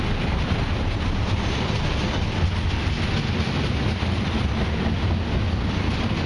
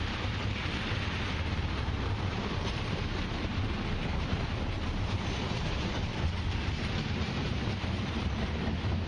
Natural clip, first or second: first